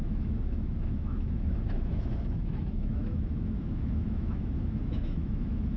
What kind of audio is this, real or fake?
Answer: fake